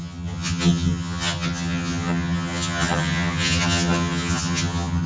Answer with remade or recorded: remade